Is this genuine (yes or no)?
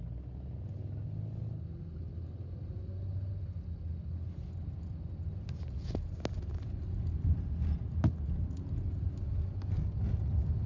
yes